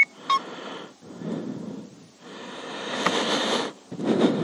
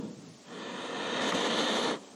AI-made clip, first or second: first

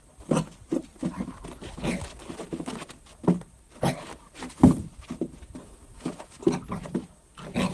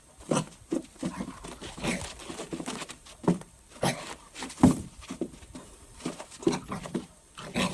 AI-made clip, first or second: second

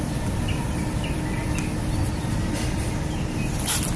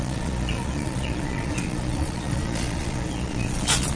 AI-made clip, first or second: second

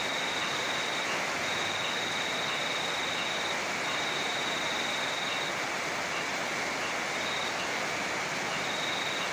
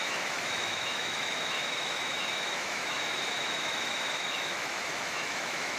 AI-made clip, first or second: second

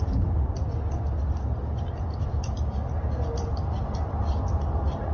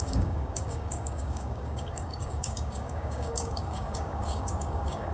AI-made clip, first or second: second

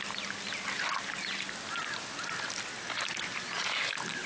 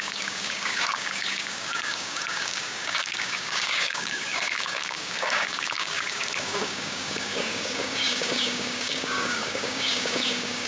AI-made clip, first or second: second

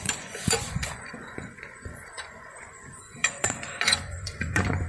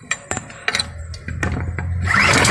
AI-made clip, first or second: first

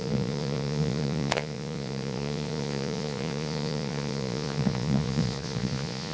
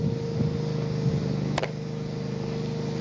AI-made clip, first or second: first